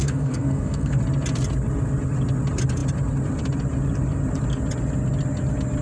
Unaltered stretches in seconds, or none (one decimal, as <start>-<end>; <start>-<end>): 1.0-5.8